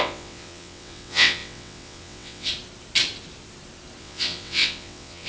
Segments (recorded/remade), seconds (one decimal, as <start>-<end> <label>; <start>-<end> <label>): 0.0-2.5 remade; 2.5-4.0 recorded; 4.0-5.3 remade